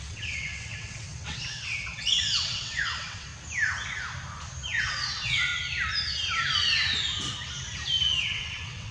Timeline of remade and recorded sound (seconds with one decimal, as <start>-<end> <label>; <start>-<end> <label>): 0.0-3.3 remade; 3.3-4.8 recorded; 4.8-5.5 remade; 5.5-8.2 recorded; 8.2-8.9 remade